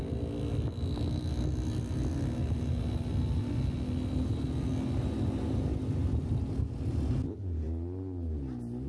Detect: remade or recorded recorded